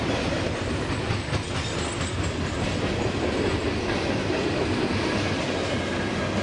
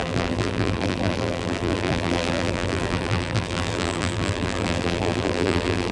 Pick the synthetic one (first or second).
second